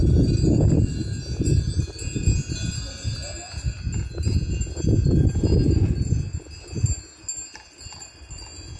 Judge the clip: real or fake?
real